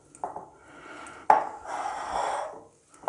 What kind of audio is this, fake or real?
real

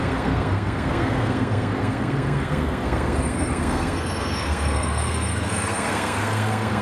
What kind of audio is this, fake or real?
fake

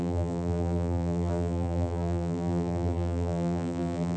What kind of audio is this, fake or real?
fake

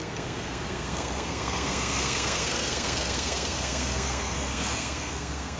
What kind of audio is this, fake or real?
fake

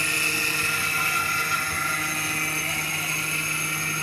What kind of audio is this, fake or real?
real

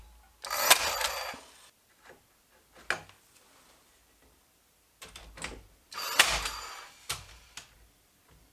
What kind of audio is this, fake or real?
real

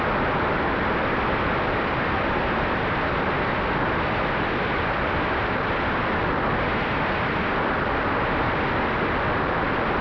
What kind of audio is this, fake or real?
real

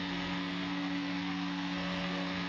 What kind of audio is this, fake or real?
fake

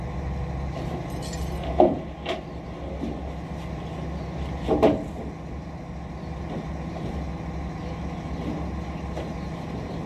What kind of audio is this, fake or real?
real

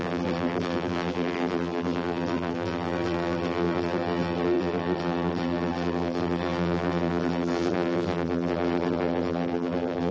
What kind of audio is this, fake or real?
fake